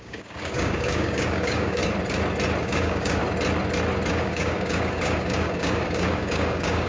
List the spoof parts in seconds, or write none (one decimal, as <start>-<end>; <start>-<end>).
0.0-1.8; 2.6-3.2; 4.1-6.9